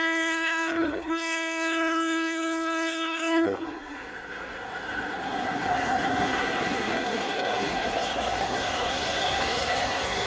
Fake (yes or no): yes